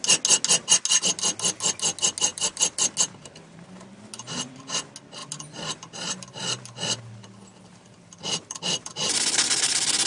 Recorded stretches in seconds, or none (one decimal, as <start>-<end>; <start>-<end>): 0.0-2.3; 2.9-5.2

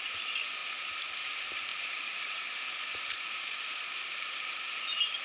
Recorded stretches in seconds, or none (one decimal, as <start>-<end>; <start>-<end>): 0.0-1.7; 4.8-5.2

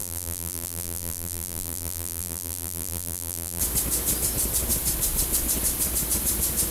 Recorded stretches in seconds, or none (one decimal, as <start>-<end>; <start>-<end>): 3.6-6.7

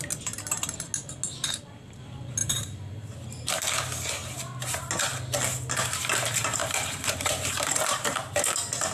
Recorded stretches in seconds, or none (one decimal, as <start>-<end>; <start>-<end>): 0.0-2.4; 3.5-6.6; 8.5-8.9

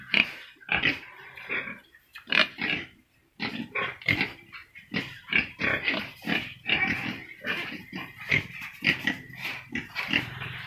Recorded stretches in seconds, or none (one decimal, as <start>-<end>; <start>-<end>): none

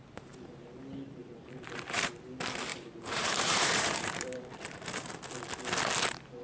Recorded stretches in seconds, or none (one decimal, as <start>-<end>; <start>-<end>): 0.0-1.2; 2.1-2.7; 5.1-6.4

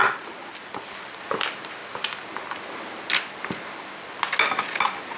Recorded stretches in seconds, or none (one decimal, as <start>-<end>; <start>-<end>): 0.0-1.2; 1.8-4.6